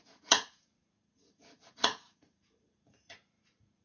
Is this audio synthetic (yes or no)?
yes